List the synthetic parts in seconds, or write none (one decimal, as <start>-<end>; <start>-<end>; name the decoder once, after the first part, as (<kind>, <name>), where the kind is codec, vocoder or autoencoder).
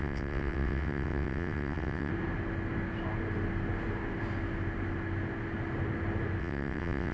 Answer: 0.0-2.1 (vocoder, WaveNeXt); 6.4-7.1